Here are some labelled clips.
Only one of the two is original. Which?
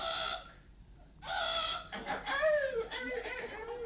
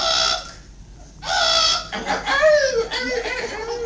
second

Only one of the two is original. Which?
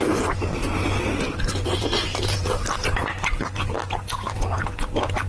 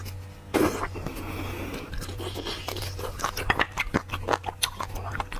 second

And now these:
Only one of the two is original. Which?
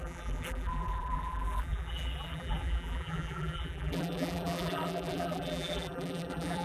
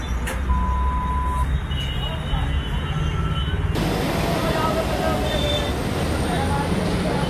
second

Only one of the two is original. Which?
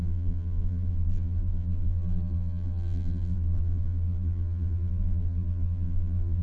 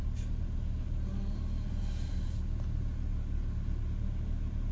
second